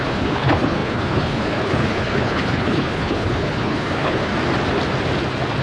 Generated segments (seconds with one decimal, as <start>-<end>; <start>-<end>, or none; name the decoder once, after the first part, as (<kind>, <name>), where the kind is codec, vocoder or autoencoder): 0.0-4.3 (codec, HILCodec)